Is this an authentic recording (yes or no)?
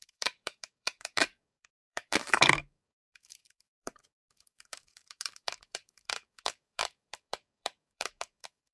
no